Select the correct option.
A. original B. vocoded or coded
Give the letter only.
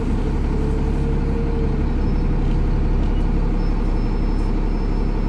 A